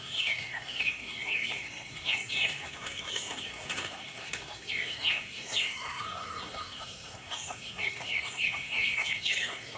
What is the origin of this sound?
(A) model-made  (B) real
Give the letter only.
A